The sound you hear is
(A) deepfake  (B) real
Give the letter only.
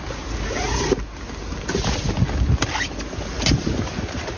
B